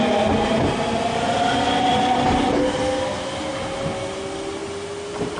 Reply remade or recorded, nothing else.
recorded